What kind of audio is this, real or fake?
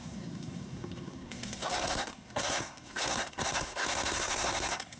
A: fake